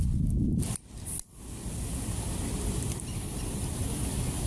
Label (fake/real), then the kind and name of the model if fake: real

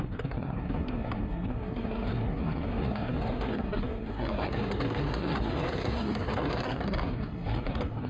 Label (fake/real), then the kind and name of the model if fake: fake, codec, SNAC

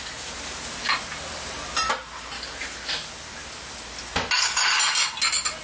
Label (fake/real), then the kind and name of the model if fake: real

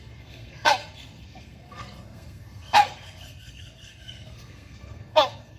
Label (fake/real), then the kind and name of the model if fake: fake, codec, SNAC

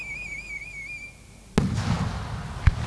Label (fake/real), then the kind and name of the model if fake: real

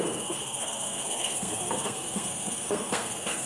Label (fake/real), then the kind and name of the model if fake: fake, codec, SNAC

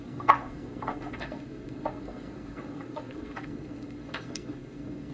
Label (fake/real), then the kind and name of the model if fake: fake, codec, SNAC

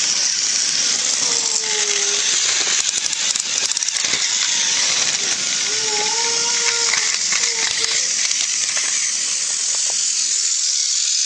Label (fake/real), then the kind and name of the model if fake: real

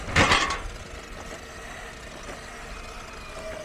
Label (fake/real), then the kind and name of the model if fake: real